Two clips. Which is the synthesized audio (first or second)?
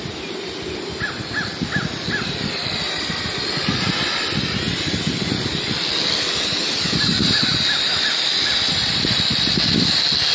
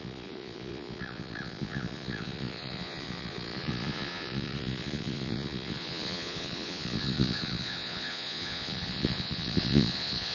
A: second